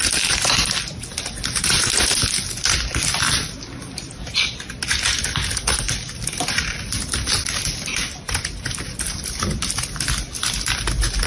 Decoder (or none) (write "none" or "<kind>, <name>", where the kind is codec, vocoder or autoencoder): none